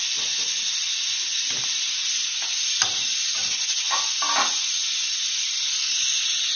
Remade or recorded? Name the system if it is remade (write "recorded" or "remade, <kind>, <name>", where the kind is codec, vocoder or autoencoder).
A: recorded